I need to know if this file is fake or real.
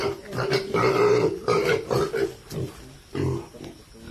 real